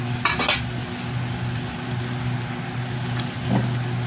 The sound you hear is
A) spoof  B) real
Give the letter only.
B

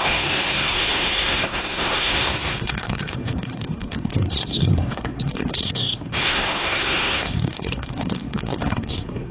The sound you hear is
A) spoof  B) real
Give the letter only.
A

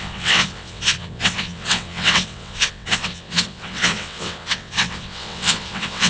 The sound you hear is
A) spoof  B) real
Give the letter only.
A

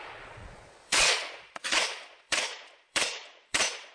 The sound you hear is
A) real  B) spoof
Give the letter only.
B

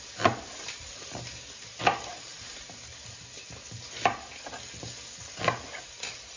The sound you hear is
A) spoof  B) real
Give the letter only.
B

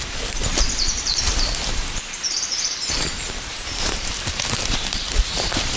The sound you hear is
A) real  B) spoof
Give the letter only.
B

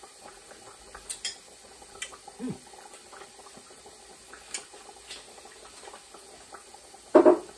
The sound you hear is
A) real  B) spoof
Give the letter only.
A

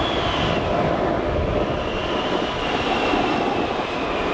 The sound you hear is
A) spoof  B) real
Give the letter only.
B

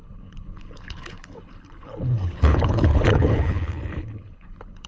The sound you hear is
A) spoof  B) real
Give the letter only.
A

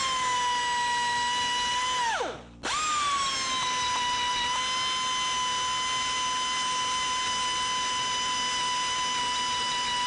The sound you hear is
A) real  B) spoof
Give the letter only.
A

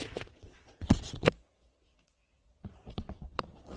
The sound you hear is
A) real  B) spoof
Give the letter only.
B